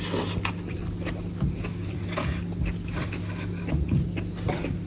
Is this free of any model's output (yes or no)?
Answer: yes